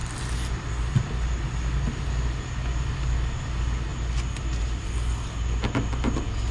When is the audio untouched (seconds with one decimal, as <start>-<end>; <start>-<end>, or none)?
0.0-6.5

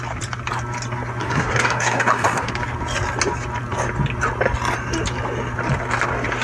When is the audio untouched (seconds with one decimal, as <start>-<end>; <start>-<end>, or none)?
0.0-1.2; 2.5-6.4

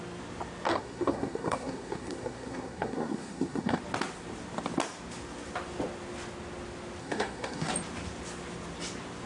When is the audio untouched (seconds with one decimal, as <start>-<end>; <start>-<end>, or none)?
0.0-0.7; 3.8-7.0; 7.7-9.3

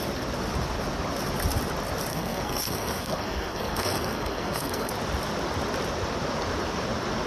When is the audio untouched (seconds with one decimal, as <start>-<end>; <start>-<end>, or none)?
0.0-2.1; 4.9-7.3

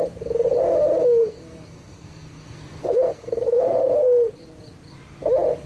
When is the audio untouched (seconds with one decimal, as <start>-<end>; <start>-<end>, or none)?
0.0-1.2; 4.3-5.7

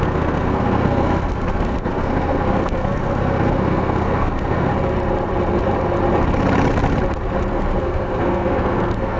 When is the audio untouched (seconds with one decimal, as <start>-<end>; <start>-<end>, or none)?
4.7-7.5

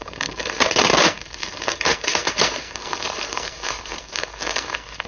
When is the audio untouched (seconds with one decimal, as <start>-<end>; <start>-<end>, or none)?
none